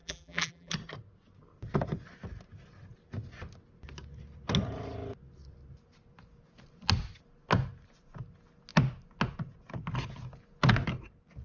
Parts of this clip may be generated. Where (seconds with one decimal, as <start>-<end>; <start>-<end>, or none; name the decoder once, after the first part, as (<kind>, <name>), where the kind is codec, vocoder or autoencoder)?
0.0-0.7 (vocoder, BigVGAN v2)